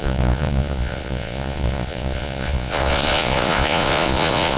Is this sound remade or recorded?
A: remade